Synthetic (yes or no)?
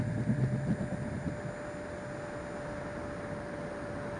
no